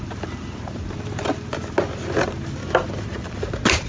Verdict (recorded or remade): recorded